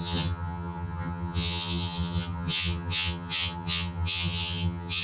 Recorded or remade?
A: remade